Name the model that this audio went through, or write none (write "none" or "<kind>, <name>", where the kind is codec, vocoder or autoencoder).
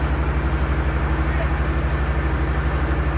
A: none